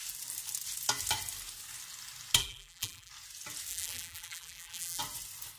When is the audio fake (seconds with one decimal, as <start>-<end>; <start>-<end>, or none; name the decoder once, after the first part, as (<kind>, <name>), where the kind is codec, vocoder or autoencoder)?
2.4-3.1 (vocoder, BigVGAN v2); 3.7-5.0